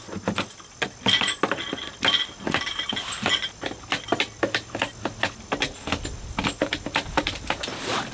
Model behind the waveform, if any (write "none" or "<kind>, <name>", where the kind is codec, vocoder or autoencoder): none